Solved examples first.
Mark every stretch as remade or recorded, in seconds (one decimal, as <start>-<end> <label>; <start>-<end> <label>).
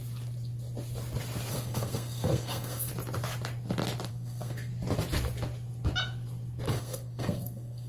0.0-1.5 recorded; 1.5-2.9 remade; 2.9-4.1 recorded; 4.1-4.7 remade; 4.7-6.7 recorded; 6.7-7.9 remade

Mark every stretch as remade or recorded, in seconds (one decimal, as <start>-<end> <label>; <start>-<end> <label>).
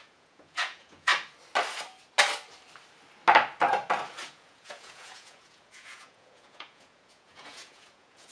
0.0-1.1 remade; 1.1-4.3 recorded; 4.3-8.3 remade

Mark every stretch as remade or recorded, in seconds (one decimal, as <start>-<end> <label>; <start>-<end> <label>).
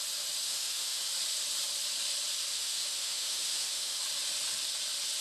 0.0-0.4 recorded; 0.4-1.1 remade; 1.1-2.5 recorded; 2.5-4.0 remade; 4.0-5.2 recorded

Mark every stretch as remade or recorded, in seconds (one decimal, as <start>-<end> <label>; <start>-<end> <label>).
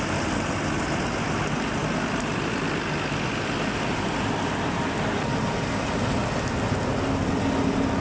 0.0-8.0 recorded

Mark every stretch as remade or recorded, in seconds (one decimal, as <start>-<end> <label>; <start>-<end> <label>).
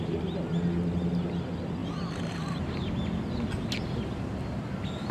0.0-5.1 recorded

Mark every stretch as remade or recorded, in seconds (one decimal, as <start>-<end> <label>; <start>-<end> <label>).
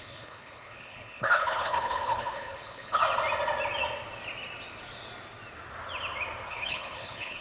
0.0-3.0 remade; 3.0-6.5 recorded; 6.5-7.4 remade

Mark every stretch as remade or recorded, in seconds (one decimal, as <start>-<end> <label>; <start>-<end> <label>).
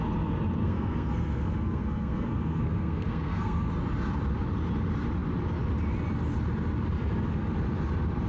0.0-0.6 recorded; 0.6-3.7 remade; 3.7-8.3 recorded